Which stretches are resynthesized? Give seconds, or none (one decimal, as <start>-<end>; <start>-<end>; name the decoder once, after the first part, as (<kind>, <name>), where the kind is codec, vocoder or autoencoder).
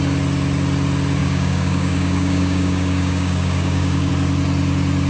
1.2-4.1 (codec, DAC)